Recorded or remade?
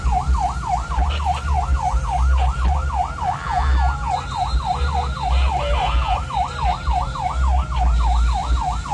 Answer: recorded